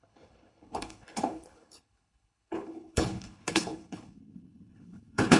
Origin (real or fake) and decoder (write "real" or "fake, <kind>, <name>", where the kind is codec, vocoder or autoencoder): fake, codec, HILCodec